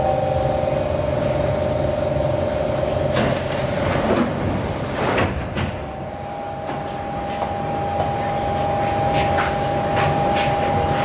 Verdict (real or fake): real